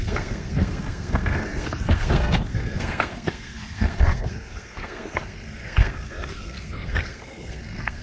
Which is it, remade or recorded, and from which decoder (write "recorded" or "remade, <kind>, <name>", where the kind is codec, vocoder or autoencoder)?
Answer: remade, codec, SNAC